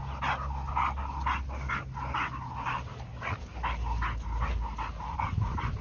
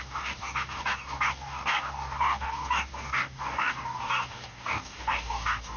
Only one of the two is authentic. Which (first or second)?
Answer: first